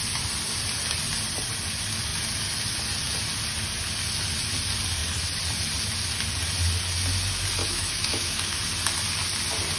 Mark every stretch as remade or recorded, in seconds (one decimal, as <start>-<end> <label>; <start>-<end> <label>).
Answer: 0.0-7.6 recorded; 7.6-8.6 remade; 8.6-9.8 recorded